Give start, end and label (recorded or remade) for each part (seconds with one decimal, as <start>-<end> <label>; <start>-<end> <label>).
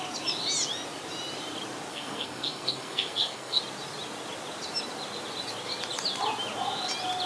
0.0-1.9 recorded; 1.9-3.6 remade; 3.6-7.3 recorded